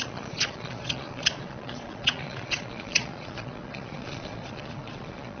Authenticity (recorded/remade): remade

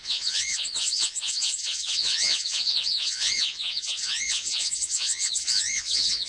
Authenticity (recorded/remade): remade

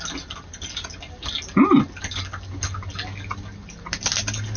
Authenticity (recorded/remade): recorded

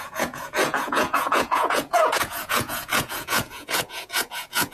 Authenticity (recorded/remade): remade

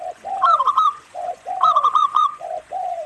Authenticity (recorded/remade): remade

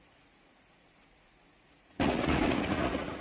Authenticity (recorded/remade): remade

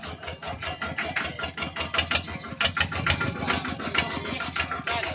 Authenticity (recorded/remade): recorded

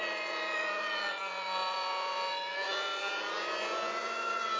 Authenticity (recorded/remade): remade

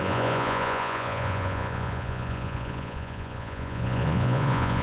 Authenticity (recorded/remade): remade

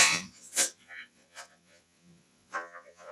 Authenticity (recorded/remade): remade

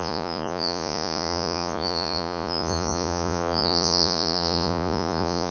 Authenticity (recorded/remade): remade